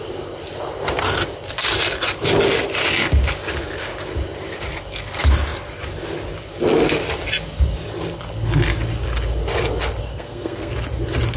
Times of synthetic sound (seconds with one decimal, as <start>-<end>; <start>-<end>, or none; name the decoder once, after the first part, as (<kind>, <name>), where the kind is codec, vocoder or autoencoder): 10.1-10.7 (codec, SNAC)